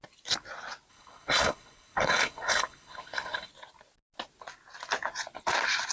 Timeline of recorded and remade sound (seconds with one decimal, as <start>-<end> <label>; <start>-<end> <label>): 0.0-0.9 recorded; 0.9-3.5 remade; 3.5-5.9 recorded